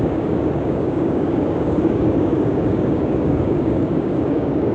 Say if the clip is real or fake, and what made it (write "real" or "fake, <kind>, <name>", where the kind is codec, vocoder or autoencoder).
fake, codec, DAC